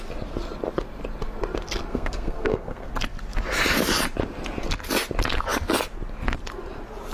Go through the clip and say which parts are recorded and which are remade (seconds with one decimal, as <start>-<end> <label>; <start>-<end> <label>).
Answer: 0.0-1.9 recorded; 1.9-2.9 remade; 2.9-7.1 recorded